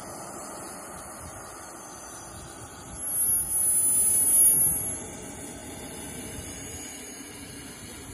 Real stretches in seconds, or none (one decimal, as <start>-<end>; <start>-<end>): 0.0-8.1